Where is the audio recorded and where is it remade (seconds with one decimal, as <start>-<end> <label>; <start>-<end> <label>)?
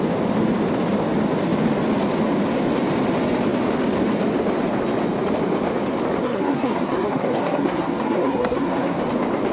0.0-6.2 recorded; 6.2-9.0 remade; 9.0-9.5 recorded